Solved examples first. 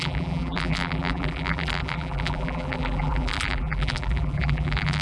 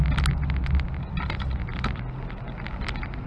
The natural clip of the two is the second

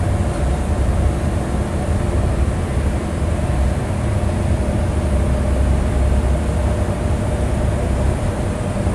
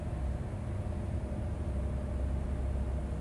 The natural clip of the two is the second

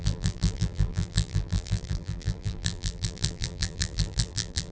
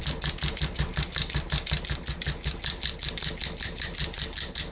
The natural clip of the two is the second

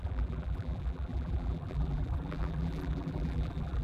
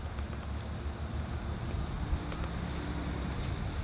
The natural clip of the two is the second